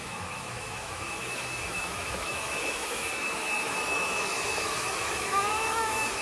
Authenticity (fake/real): fake